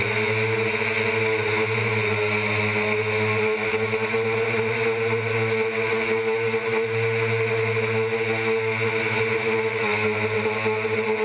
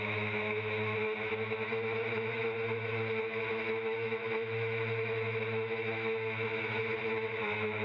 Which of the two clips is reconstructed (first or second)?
second